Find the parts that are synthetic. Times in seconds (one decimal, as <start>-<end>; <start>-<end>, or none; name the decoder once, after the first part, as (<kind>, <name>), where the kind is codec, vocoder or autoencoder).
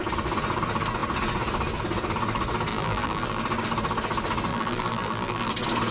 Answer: 2.7-3.4 (vocoder, BigVGAN v2); 4.5-5.5